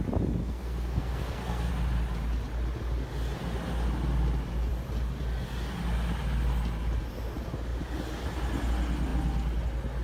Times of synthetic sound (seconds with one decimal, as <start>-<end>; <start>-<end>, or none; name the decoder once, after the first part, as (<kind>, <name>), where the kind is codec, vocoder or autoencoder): 0.4-1.7 (codec, SNAC)